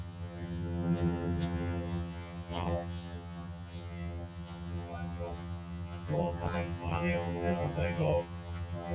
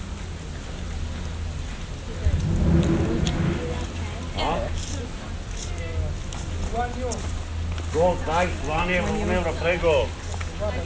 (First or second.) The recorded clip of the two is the second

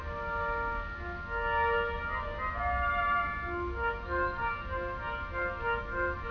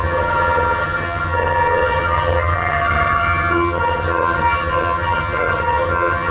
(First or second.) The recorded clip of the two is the first